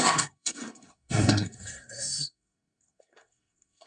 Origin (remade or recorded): remade